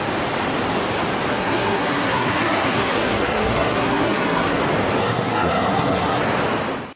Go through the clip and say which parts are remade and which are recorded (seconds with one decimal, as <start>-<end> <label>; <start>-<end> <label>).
0.0-1.3 recorded; 1.3-4.6 remade; 4.6-5.0 recorded; 5.0-6.2 remade; 6.2-7.0 recorded